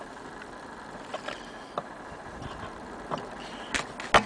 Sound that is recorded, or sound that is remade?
recorded